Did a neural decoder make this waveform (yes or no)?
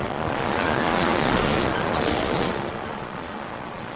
yes